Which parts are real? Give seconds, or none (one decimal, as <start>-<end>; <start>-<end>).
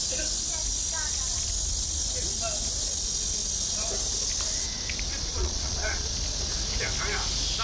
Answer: 0.0-5.3; 6.1-7.6